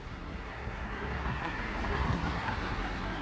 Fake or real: fake